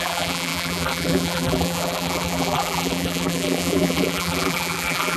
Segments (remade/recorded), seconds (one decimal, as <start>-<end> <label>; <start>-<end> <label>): 0.0-5.2 remade